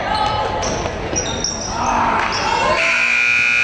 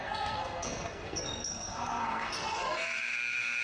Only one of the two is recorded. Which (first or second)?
first